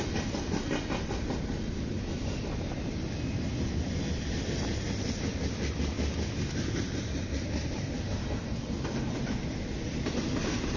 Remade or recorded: recorded